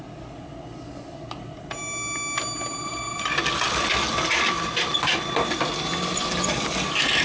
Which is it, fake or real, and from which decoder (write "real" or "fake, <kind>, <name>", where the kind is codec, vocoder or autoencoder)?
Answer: real